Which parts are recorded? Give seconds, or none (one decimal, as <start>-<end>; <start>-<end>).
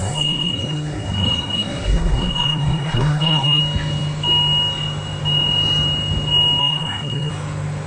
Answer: 3.6-6.6; 7.3-7.9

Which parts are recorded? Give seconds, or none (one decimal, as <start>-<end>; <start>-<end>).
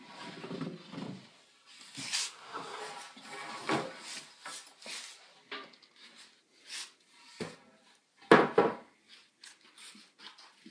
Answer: 0.0-2.2; 2.8-10.7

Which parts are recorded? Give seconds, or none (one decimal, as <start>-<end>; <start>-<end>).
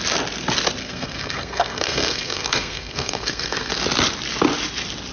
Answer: 0.0-0.8; 3.7-5.1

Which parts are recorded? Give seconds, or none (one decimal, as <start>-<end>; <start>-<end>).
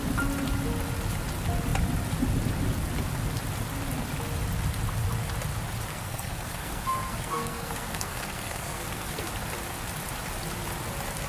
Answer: 0.0-5.9; 9.3-11.3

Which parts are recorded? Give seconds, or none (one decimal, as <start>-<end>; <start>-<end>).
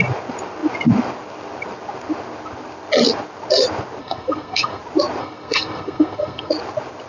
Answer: 0.0-4.0; 4.8-5.2; 6.5-7.1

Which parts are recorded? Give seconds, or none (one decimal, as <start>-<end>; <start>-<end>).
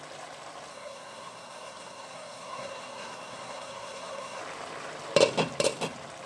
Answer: 0.0-0.7; 4.4-6.3